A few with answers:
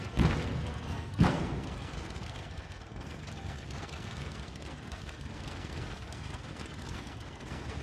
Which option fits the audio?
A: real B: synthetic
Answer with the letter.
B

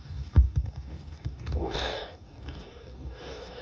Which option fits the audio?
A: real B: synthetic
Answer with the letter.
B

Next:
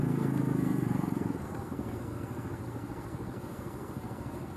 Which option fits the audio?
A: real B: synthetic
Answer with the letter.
B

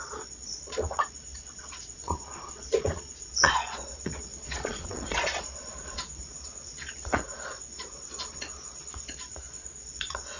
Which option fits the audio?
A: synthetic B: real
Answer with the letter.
A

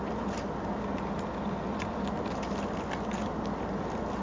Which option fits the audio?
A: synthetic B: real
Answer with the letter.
B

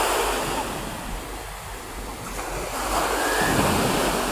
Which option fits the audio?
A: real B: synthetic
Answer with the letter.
A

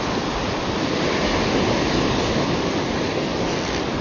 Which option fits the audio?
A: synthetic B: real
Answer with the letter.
B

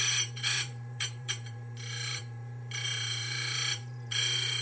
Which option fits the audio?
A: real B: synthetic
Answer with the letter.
B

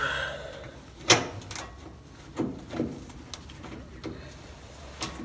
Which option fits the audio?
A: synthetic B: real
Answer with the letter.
B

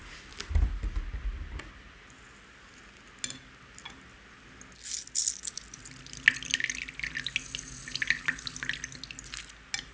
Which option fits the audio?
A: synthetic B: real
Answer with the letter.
B